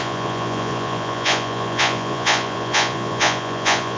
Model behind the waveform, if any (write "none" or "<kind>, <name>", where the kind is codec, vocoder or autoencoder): vocoder, Vocos